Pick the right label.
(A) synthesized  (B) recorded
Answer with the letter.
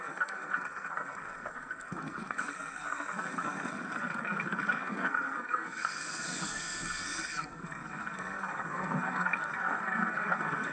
A